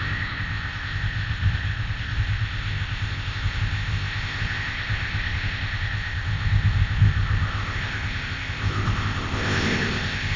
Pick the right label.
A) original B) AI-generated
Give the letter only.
B